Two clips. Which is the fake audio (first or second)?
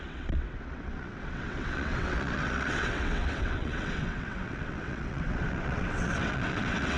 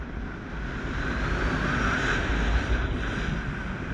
first